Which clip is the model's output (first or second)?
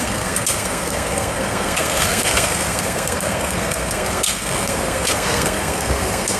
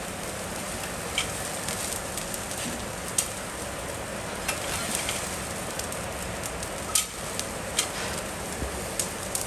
first